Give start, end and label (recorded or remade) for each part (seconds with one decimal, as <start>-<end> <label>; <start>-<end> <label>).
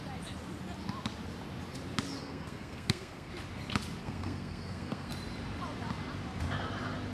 0.0-2.2 recorded; 2.2-3.3 remade; 3.3-4.0 recorded; 4.0-5.1 remade; 5.1-7.1 recorded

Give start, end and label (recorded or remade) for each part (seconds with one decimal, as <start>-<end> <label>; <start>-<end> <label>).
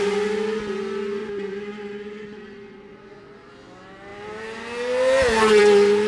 0.0-1.2 recorded; 1.2-3.5 remade; 3.5-6.1 recorded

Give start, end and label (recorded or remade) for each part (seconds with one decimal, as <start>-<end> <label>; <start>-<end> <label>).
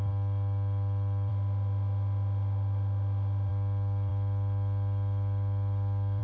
0.0-1.3 recorded; 1.3-3.5 remade; 3.5-6.2 recorded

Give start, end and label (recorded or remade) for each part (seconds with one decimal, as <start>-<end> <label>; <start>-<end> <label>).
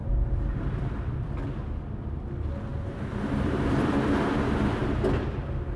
0.0-1.3 remade; 1.3-2.7 recorded; 2.7-4.3 remade; 4.3-5.8 recorded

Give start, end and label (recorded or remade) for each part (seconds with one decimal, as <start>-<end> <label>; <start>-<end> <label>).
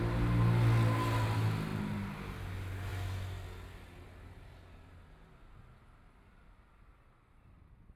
0.0-8.0 recorded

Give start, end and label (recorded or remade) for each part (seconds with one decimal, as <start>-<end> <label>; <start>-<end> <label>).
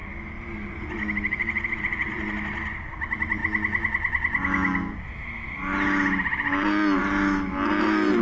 0.0-8.2 recorded